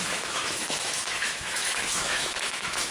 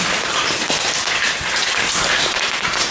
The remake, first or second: first